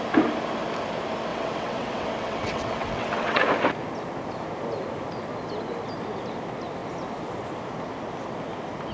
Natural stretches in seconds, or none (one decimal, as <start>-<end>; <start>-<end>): 0.0-1.3; 3.4-8.9